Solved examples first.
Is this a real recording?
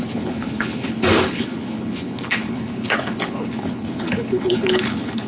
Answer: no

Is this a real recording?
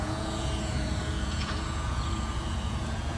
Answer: no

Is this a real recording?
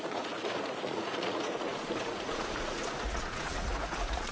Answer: no